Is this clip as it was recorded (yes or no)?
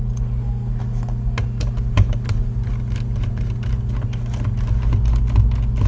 yes